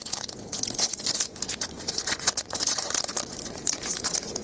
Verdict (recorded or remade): remade